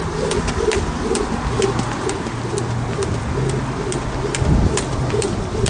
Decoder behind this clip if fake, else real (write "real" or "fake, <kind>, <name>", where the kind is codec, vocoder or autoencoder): real